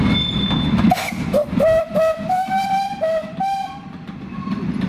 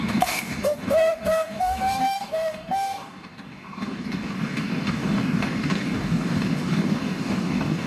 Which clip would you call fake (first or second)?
second